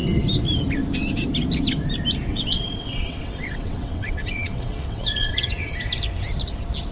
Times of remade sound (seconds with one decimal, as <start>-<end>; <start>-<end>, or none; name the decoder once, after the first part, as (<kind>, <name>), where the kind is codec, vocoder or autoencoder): 2.3-5.7 (vocoder, WaveNeXt)